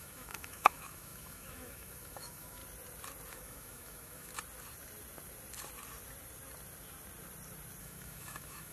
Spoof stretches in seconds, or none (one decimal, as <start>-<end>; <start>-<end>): 0.0-2.6; 3.3-4.3; 7.8-8.7

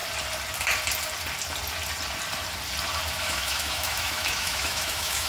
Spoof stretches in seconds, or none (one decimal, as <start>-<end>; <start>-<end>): 3.2-5.3

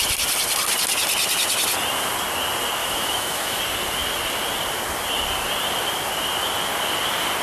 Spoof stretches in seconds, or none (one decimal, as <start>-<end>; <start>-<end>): 2.8-3.6

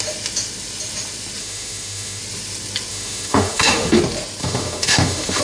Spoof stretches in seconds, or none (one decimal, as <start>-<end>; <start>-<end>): 1.4-2.2; 2.9-4.0; 4.4-5.4

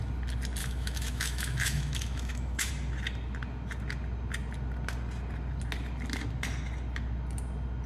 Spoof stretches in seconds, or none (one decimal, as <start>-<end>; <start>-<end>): 0.6-2.7